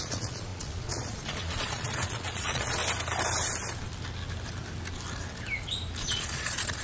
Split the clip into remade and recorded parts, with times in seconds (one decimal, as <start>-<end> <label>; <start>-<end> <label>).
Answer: 0.0-2.8 remade; 2.8-6.0 recorded; 6.0-6.8 remade